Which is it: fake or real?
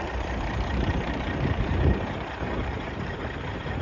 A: fake